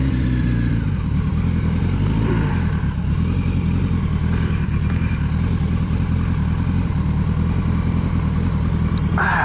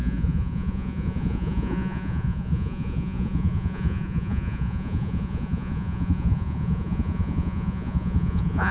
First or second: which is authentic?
first